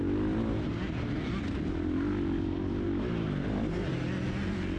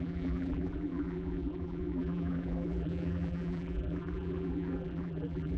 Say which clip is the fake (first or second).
second